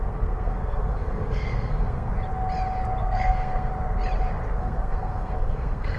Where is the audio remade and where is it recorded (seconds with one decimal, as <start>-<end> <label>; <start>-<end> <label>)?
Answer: 0.0-2.1 remade; 2.1-3.0 recorded; 3.0-3.7 remade; 3.7-4.6 recorded; 4.6-6.0 remade